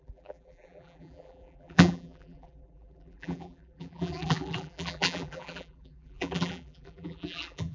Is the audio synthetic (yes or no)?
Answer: yes